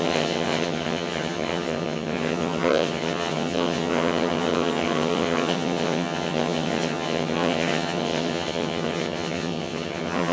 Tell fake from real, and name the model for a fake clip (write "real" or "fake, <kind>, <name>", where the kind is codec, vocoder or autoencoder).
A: fake, vocoder, HiFi-GAN